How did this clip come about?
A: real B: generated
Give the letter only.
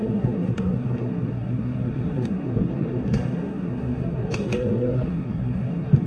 B